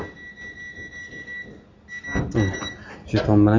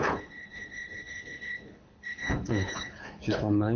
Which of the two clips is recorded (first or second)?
first